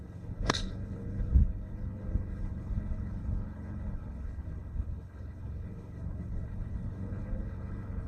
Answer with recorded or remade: remade